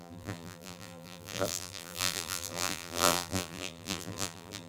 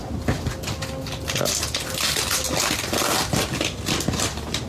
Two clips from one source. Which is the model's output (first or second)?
first